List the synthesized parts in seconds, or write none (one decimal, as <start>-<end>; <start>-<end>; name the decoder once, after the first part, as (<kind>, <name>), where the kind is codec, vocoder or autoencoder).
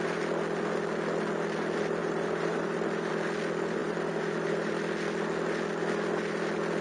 2.0-3.1 (vocoder, BigVGAN v2); 3.8-4.7